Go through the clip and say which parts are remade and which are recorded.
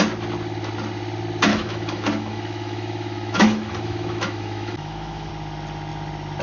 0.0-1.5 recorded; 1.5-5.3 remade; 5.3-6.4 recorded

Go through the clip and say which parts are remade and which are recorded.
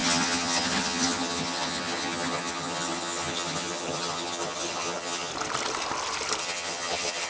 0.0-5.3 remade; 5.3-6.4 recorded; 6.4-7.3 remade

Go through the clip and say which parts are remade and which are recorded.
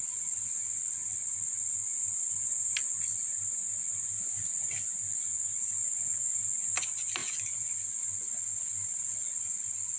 0.0-10.0 recorded